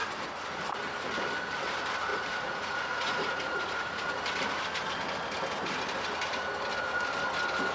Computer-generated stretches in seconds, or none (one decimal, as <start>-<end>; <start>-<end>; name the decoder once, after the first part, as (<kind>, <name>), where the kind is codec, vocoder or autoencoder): 2.1-4.2 (vocoder, Vocos)